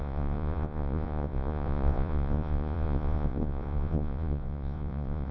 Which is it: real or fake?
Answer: fake